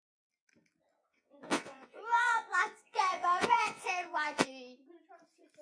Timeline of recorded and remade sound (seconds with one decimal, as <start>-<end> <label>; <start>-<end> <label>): 0.0-1.1 recorded; 1.1-4.5 remade; 4.5-5.6 recorded